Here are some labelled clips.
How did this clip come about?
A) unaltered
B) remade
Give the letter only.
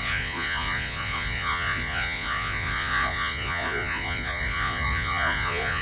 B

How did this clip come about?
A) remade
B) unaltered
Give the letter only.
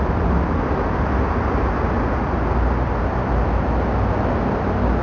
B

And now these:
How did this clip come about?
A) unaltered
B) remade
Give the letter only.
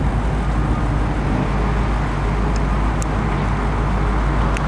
A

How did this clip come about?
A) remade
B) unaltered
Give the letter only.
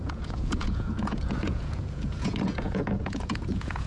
A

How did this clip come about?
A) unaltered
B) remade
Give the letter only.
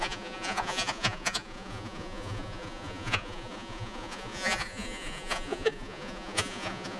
B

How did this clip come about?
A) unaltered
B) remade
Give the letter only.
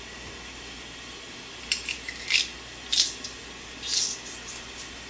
A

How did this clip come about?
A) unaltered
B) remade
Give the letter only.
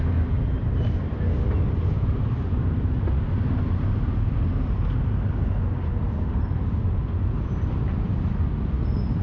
A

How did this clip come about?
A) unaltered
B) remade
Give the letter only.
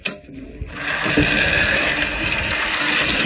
A